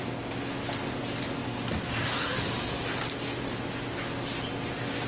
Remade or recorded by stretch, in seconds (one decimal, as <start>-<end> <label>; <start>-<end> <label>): 0.0-5.1 recorded